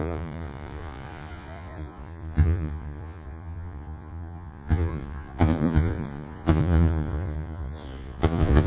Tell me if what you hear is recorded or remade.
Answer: remade